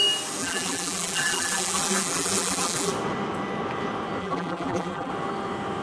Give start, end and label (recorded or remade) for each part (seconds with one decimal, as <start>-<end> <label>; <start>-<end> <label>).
0.0-0.4 recorded; 0.4-2.9 remade; 2.9-4.2 recorded; 4.2-5.1 remade; 5.1-5.8 recorded